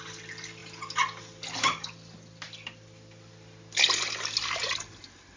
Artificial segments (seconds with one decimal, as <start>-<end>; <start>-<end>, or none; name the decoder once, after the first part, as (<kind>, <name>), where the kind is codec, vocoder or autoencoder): none